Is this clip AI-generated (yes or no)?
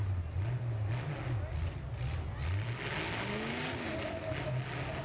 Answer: no